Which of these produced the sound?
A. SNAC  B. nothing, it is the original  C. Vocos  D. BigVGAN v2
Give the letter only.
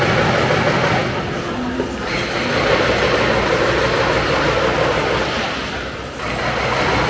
B